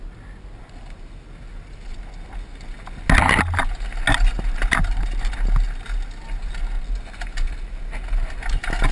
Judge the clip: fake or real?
real